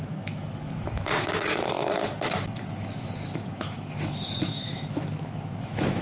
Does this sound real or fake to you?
fake